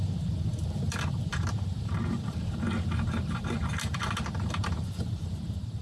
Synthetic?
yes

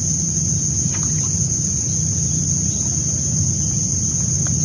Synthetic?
yes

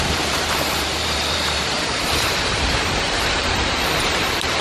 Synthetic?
yes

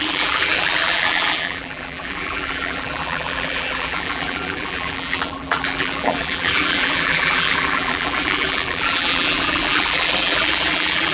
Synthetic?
yes